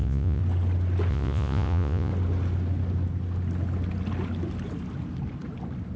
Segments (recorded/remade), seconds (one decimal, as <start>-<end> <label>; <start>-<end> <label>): 0.0-0.4 remade; 0.4-1.1 recorded; 1.1-2.1 remade; 2.1-6.0 recorded